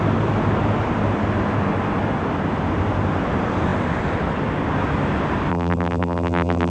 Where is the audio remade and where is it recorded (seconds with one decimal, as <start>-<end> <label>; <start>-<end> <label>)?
0.0-5.5 recorded; 5.5-6.7 remade